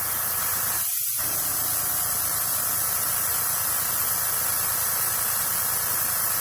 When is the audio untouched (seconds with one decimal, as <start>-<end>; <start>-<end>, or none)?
0.0-6.4